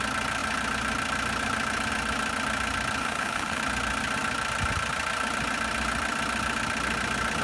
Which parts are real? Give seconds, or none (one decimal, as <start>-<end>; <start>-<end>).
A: 0.0-3.0; 3.6-7.4